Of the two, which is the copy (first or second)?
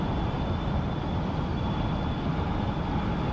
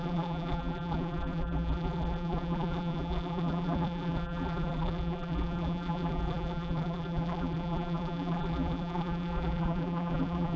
second